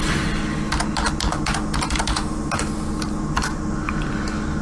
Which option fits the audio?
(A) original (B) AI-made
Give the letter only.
A